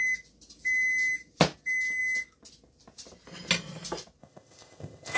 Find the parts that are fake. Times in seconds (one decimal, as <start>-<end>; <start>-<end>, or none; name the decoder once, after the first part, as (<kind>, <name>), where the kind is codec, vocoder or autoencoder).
4.2-5.2 (codec, ZipCodec)